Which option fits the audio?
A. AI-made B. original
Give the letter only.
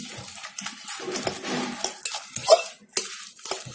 B